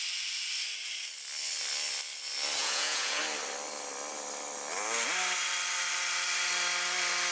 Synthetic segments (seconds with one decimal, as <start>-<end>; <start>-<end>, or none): 2.6-3.2